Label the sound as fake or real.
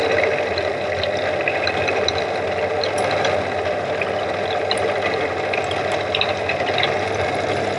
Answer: real